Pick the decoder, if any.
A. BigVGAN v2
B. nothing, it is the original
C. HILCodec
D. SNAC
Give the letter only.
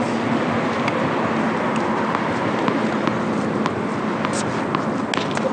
B